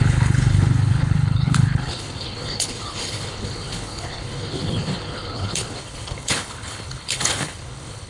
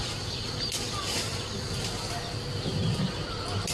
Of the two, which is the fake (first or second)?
first